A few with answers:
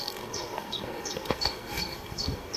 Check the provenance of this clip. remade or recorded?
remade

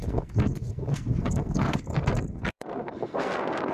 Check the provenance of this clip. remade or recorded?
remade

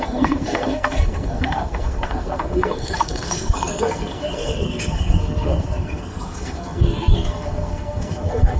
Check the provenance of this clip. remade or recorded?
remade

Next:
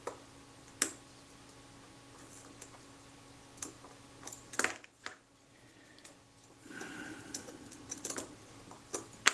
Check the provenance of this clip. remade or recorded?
recorded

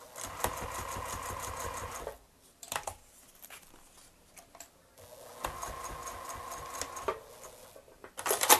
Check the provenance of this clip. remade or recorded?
recorded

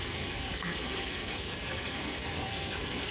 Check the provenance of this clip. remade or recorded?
remade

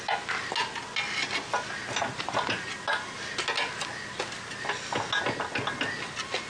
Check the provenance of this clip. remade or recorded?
recorded